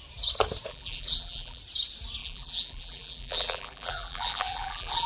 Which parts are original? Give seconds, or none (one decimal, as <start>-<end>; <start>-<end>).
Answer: 0.0-0.7; 1.6-2.2